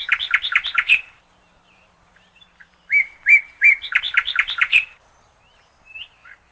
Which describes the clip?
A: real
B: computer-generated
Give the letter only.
B